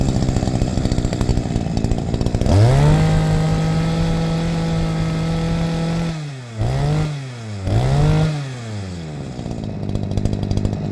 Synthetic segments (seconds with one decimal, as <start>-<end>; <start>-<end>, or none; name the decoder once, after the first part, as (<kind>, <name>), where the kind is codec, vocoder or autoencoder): none